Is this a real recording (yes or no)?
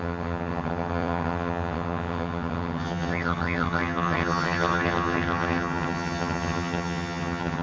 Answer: no